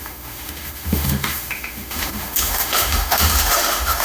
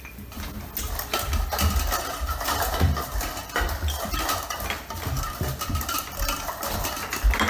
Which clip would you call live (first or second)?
second